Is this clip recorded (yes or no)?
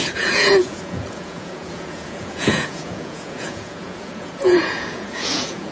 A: no